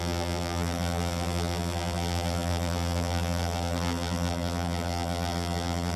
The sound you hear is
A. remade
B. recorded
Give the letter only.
A